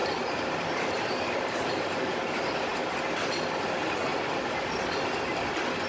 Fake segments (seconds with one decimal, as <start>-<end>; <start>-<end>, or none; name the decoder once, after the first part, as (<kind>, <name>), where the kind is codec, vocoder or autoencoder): 0.0-2.1 (vocoder, BigVGAN v2); 4.1-4.8